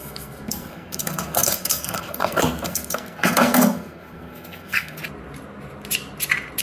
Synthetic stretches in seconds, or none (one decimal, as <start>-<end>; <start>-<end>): 0.0-5.0